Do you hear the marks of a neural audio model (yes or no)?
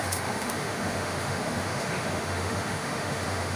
yes